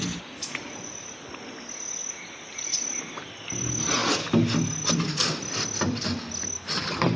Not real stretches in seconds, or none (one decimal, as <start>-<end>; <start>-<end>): none